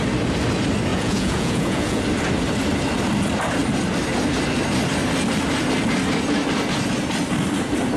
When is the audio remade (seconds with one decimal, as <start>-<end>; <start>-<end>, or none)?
0.9-2.0